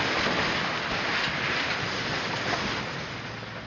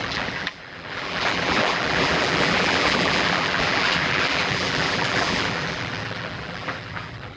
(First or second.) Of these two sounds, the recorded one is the first